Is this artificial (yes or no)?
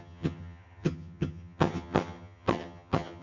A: yes